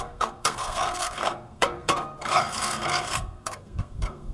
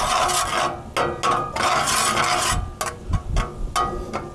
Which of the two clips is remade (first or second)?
first